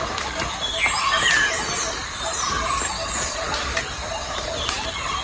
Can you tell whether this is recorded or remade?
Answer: recorded